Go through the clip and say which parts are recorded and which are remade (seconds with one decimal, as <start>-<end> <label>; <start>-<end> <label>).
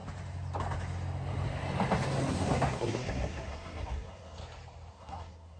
0.0-2.3 recorded; 2.3-4.4 remade; 4.4-4.9 recorded; 4.9-5.6 remade